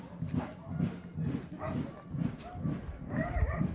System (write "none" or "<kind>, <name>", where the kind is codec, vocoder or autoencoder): none